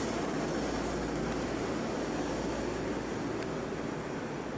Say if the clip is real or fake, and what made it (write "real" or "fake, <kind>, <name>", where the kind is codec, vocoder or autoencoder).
real